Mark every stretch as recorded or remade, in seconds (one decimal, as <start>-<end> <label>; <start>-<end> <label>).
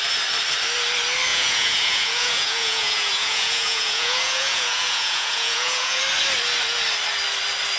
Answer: 0.0-1.3 recorded; 1.3-6.0 remade; 6.0-7.8 recorded